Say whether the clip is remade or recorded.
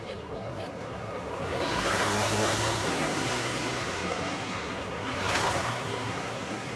remade